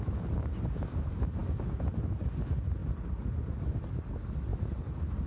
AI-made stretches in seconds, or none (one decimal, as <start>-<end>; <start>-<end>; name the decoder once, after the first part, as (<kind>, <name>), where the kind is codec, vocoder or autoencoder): none